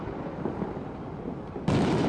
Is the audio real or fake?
real